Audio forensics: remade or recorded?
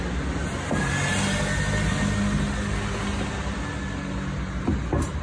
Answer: recorded